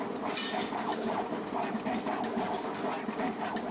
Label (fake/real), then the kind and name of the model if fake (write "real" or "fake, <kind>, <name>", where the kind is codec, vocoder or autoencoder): real